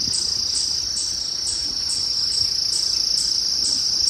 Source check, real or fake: real